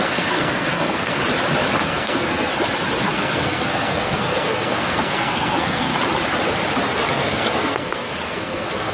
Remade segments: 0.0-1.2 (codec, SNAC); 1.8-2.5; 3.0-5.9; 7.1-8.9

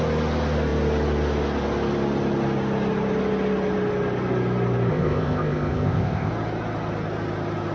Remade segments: 4.9-6.3 (codec, ZipCodec)

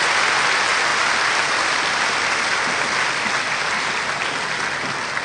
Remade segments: 0.9-4.0 (vocoder, BigVGAN v2)

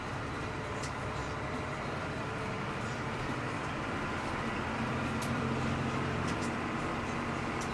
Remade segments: 0.0-7.7 (vocoder, BigVGAN v2)

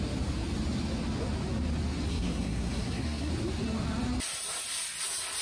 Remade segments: 2.1-3.3 (codec, SNAC)

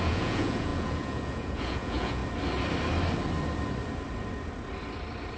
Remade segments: 0.0-2.2 (vocoder, Vocos)

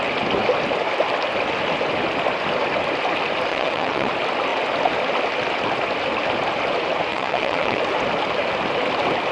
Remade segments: 3.5-4.1 (vocoder, WaveNeXt); 7.1-7.8

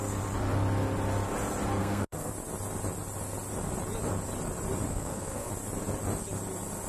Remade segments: 1.8-2.3 (codec, SNAC); 4.9-5.5